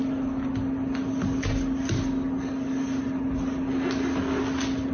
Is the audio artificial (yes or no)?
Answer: no